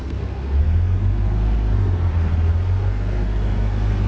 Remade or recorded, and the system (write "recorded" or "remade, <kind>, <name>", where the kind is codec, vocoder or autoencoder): remade, codec, SNAC